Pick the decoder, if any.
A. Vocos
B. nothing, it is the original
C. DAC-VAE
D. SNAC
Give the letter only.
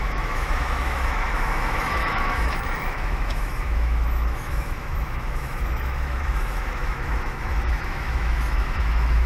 C